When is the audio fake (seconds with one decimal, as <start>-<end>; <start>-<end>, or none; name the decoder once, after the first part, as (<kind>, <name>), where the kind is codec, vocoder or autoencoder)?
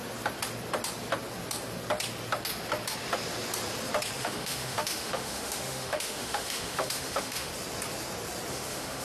4.2-7.5 (autoencoder, DAC-VAE); 8.5-9.0